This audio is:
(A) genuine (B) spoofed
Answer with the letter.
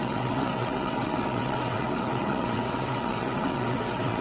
B